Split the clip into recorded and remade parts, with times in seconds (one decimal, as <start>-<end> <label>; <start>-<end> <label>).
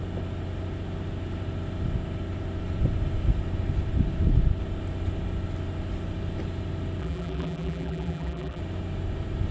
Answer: 0.0-7.0 recorded; 7.0-8.6 remade; 8.6-9.5 recorded